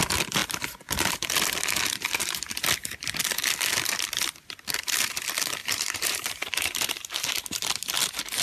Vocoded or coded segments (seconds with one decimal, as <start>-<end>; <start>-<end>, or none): 5.6-7.4